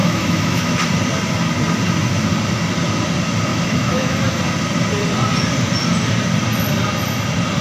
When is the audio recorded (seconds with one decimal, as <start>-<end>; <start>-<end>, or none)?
0.7-3.5; 4.4-7.6